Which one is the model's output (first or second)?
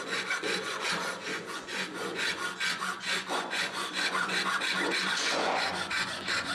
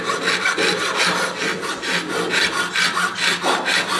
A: first